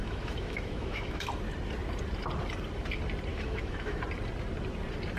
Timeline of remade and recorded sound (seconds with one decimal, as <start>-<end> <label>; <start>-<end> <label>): 0.0-1.3 remade; 1.3-3.3 recorded; 3.3-4.0 remade; 4.0-5.2 recorded